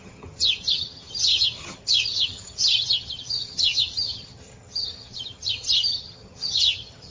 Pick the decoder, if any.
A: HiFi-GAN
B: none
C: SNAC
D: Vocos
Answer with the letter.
A